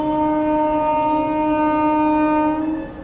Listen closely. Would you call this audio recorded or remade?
recorded